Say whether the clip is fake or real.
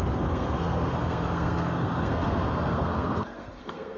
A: fake